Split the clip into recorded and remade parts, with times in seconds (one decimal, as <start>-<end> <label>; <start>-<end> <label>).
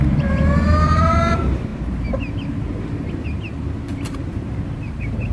0.0-5.3 remade